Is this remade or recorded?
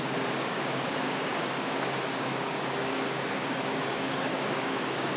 remade